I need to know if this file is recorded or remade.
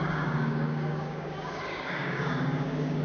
remade